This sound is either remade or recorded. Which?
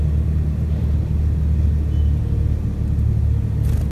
recorded